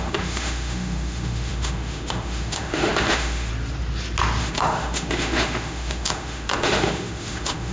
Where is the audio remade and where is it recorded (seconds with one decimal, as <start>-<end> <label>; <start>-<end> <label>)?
0.0-3.5 remade; 3.5-4.4 recorded; 4.4-7.7 remade

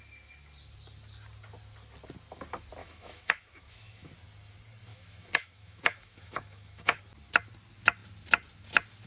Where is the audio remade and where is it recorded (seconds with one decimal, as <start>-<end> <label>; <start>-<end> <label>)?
0.0-2.8 recorded; 2.8-4.1 remade; 4.1-4.9 recorded; 4.9-7.0 remade; 7.0-9.1 recorded

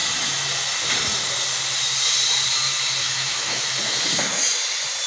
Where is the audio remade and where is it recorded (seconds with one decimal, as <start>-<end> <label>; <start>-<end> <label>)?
0.0-3.0 recorded; 3.0-3.6 remade; 3.6-5.1 recorded